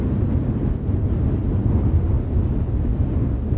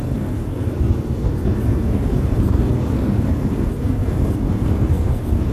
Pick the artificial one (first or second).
second